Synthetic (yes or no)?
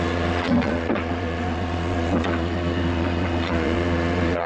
yes